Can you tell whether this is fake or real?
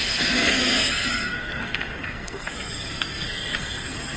fake